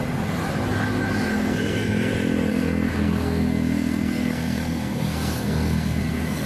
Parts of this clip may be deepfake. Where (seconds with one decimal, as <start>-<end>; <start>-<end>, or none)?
1.3-2.1; 2.5-6.5